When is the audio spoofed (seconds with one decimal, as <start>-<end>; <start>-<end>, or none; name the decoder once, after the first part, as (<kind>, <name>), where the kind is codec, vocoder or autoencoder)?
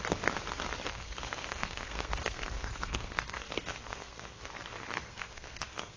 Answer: 0.9-4.5 (codec, SNAC); 5.0-6.0